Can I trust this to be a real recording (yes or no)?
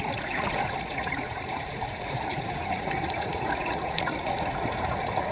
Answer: no